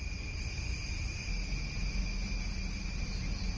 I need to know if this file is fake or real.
real